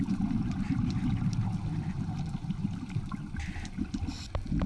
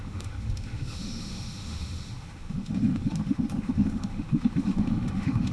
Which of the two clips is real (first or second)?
first